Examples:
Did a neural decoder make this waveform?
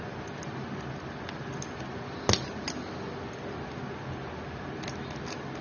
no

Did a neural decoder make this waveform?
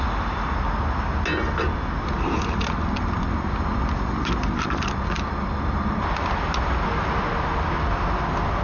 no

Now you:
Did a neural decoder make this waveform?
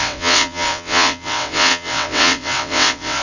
yes